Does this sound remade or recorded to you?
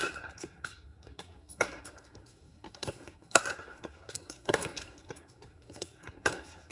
remade